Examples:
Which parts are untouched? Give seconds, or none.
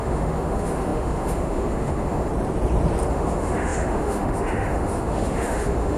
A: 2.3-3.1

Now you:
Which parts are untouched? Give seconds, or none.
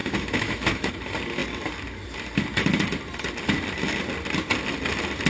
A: 0.9-5.3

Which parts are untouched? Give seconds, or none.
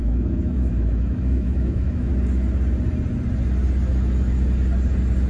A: 2.1-5.3